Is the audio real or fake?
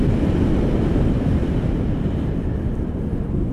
fake